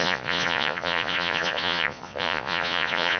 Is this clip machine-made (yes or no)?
yes